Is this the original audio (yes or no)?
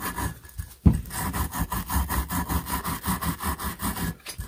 yes